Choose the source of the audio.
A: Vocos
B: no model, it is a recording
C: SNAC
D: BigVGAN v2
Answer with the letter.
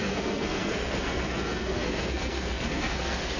C